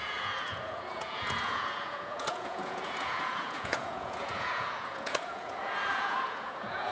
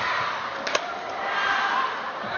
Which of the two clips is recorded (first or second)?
second